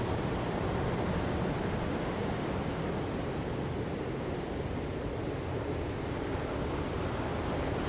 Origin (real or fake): real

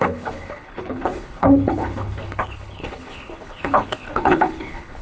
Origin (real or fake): fake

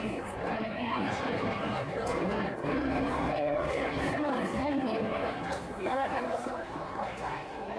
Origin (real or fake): fake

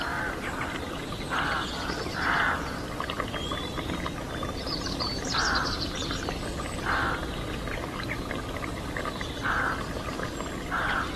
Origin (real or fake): real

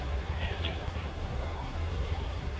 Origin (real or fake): fake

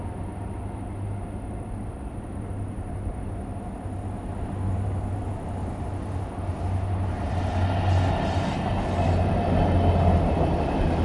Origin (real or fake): real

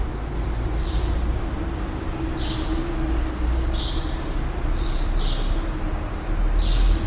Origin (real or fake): real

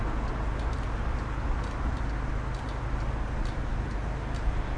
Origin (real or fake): real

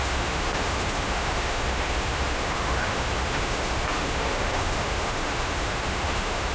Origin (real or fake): fake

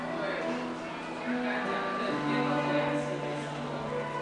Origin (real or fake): real